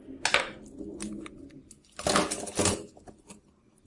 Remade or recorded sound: recorded